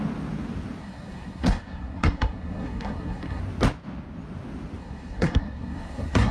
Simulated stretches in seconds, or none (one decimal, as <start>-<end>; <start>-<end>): 0.8-3.4; 4.8-6.3

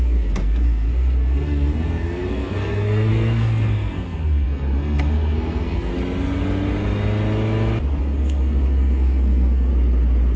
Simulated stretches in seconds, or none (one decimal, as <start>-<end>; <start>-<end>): 0.0-5.9; 8.0-9.7

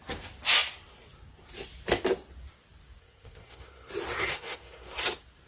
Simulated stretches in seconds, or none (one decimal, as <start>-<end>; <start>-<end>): 3.0-3.9; 4.3-5.0

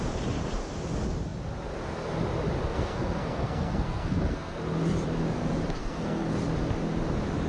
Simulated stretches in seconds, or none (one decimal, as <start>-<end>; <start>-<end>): 2.7-4.6; 5.8-6.3

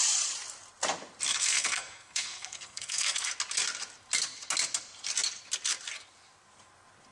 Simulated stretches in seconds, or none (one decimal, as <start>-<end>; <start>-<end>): 1.3-3.3

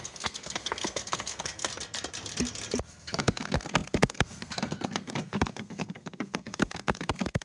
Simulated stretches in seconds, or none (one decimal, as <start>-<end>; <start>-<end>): 0.0-1.7; 2.9-7.4

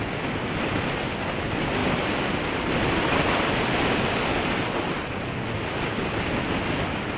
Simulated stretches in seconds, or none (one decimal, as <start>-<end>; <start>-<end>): none

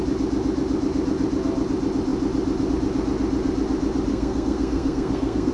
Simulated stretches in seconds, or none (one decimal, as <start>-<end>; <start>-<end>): 4.1-5.5